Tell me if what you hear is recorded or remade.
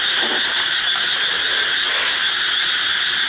recorded